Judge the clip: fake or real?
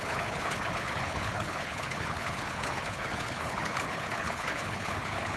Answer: fake